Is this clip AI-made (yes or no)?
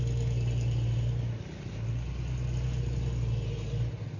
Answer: no